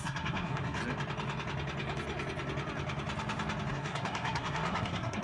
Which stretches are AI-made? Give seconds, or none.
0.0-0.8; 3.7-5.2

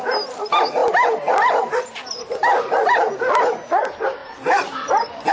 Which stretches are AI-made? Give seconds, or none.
none